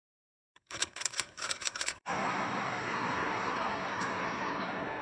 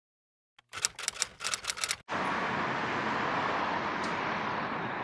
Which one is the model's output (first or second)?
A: first